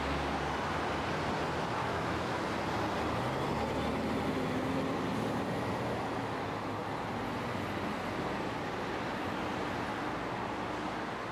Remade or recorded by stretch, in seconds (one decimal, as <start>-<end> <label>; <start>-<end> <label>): 0.0-1.8 recorded; 1.8-2.4 remade; 2.4-11.3 recorded